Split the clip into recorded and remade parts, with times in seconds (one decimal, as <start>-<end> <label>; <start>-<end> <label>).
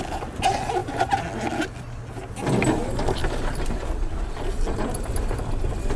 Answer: 0.0-6.0 recorded